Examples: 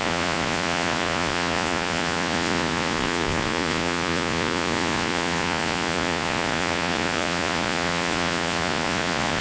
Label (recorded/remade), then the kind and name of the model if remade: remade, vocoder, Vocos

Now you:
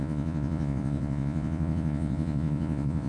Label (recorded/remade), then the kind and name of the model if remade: remade, vocoder, Vocos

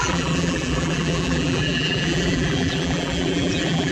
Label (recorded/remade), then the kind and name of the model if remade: remade, vocoder, BigVGAN v2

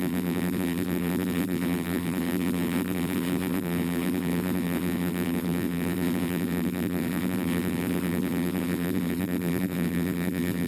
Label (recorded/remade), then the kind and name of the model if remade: remade, vocoder, BigVGAN v2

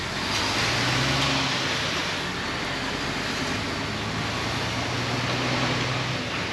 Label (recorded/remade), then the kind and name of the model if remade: recorded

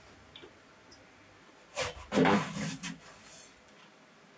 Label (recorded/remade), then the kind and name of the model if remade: recorded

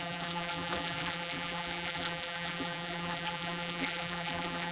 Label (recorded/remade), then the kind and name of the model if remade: remade, vocoder, BigVGAN v2